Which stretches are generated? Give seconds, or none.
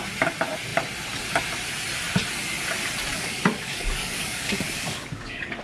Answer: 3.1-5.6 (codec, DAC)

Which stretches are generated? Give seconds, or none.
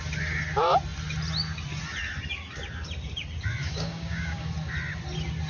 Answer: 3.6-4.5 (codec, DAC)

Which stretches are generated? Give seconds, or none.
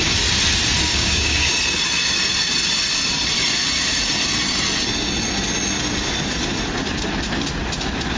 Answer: 0.9-1.5 (codec, DAC)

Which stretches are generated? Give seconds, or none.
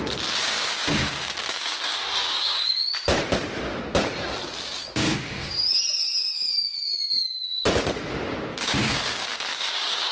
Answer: 0.4-2.6 (codec, DAC); 4.8-5.5; 8.5-10.1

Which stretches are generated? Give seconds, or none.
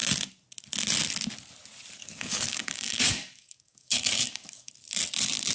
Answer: 2.0-4.7 (codec, DAC)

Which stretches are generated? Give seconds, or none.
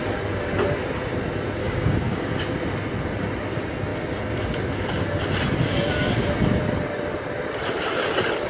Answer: 1.6-2.4 (codec, DAC)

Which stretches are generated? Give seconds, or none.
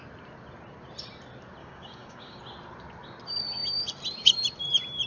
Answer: 1.6-2.4 (codec, DAC)